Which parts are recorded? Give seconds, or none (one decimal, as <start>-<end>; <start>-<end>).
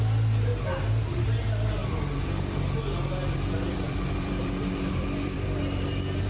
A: 0.0-1.8; 5.6-6.3